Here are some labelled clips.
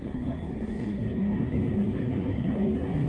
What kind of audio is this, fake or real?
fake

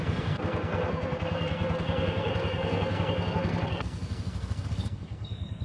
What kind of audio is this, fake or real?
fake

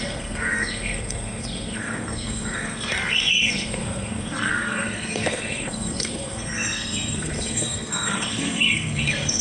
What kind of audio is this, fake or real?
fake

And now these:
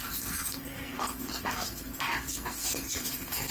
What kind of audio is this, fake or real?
fake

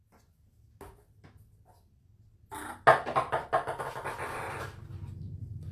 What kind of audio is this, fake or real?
real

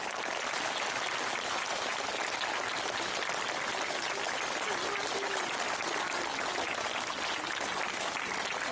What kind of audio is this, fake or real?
real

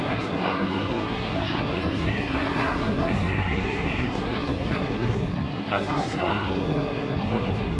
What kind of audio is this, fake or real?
fake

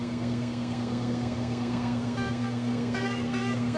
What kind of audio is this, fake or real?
fake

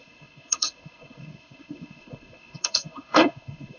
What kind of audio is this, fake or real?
fake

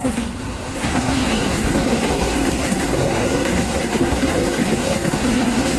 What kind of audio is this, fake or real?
fake